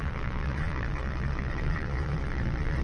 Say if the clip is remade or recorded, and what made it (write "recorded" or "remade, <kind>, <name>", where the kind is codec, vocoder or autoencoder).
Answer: remade, vocoder, Vocos